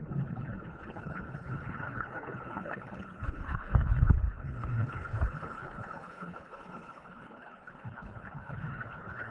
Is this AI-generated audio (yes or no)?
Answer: yes